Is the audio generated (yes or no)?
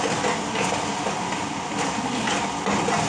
no